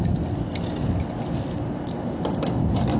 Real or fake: real